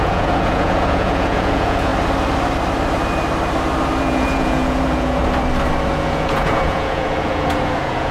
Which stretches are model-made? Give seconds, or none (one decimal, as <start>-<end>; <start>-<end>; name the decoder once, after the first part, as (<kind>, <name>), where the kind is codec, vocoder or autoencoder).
0.0-1.9 (vocoder, Vocos); 4.0-5.2; 5.9-8.1